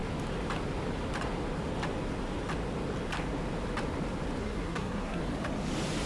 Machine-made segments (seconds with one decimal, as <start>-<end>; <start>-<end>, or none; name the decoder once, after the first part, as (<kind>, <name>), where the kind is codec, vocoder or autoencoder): 4.4-5.2 (codec, SNAC)